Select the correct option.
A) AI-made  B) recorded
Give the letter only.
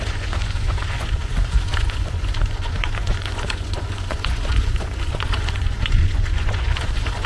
A